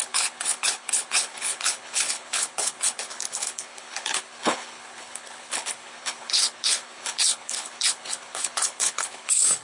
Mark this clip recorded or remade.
remade